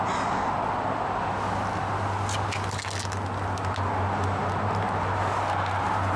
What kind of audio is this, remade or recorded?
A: recorded